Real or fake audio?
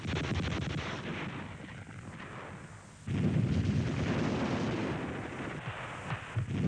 real